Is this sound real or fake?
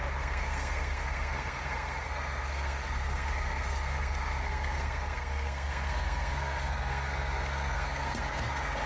fake